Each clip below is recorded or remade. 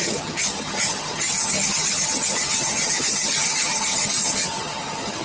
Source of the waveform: remade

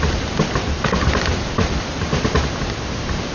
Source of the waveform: remade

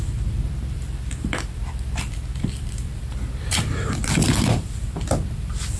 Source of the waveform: remade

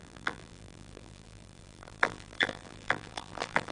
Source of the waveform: remade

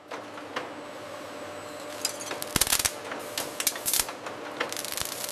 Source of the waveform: recorded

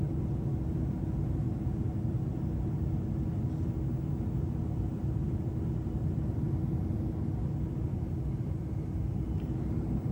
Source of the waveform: recorded